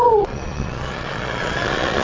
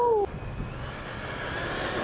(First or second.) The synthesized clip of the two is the first